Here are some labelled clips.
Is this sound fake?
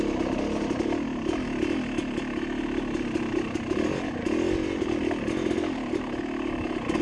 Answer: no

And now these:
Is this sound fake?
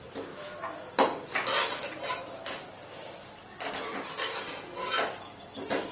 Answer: no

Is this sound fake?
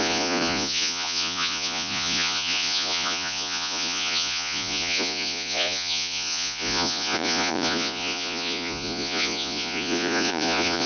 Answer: yes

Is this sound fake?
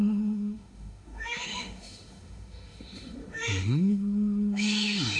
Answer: yes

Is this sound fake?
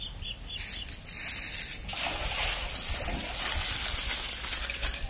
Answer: no